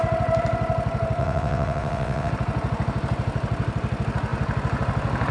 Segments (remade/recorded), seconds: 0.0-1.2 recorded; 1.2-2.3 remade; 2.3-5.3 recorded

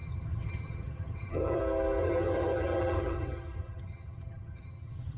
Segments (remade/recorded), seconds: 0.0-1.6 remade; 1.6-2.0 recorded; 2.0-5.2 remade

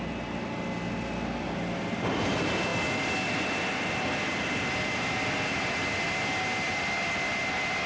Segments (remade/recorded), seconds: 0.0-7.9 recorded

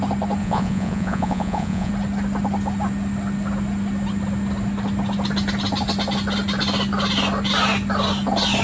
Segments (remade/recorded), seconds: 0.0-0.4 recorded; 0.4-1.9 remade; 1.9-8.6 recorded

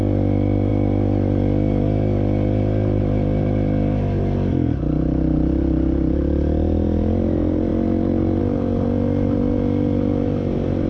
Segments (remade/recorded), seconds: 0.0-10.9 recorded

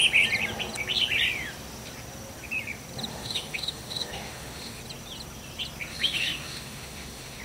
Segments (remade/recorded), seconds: 0.0-3.1 recorded; 3.1-4.8 remade; 4.8-5.9 recorded; 5.9-7.4 remade

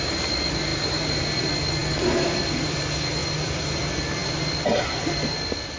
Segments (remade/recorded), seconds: 0.0-0.7 recorded; 0.7-1.4 remade; 1.4-1.8 recorded; 1.8-2.8 remade; 2.8-3.2 recorded; 3.2-3.8 remade; 3.8-5.8 recorded

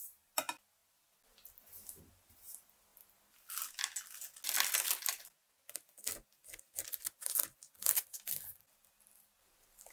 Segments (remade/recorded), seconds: 0.0-9.9 recorded